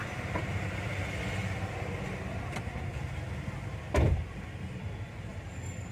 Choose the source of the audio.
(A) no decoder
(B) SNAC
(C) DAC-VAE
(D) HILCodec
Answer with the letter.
A